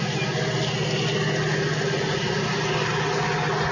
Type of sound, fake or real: real